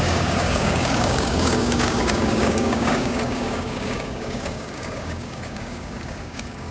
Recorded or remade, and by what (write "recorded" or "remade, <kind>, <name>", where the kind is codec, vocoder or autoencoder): remade, codec, DAC